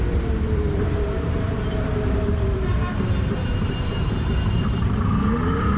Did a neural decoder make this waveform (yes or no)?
yes